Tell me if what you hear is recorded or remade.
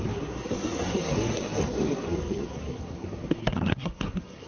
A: remade